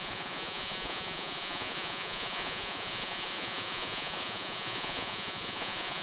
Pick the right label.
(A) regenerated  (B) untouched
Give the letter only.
A